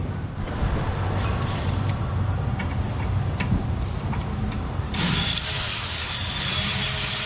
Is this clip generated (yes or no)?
yes